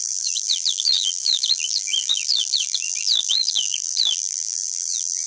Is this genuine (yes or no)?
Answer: no